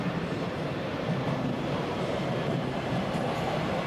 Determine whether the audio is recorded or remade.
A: remade